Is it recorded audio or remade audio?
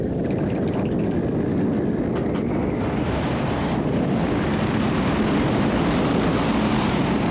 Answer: recorded